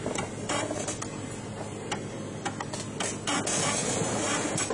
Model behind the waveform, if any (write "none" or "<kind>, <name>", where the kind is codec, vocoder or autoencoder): none